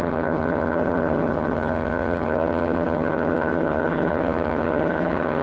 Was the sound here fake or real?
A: fake